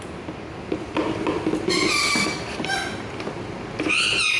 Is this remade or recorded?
recorded